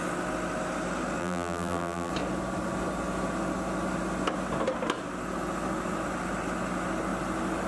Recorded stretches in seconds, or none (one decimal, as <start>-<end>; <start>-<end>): 0.0-1.2; 2.1-7.7

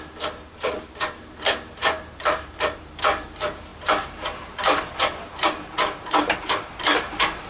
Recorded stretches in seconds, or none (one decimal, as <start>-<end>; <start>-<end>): none

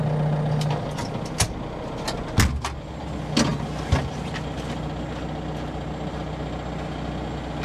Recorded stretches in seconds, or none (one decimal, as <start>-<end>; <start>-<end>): 0.0-7.6

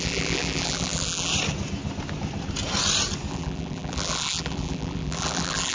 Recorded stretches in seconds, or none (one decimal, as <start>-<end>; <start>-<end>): 1.3-3.3

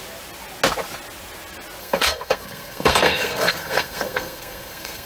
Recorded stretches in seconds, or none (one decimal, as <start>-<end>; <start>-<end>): 0.0-1.8